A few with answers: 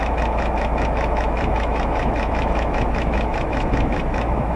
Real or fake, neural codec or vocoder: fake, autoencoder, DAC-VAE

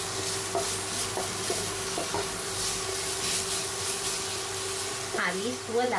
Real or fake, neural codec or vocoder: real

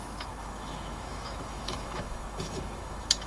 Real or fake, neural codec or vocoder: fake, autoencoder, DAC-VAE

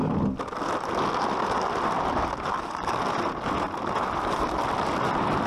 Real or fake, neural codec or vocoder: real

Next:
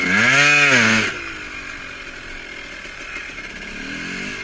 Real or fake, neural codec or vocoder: real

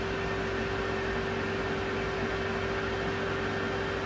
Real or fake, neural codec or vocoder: real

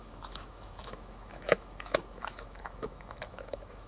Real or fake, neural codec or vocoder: fake, autoencoder, DAC-VAE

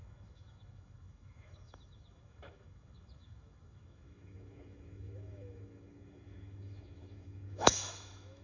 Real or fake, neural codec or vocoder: fake, autoencoder, DAC-VAE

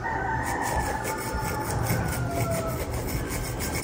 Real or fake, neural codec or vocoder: real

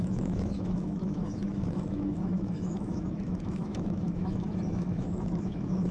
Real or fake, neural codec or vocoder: fake, autoencoder, DAC-VAE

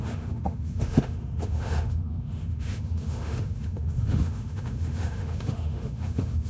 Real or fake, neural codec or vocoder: fake, autoencoder, DAC-VAE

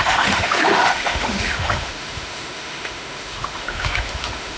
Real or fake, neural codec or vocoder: fake, autoencoder, DAC-VAE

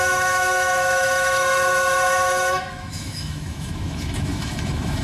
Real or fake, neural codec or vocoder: fake, autoencoder, DAC-VAE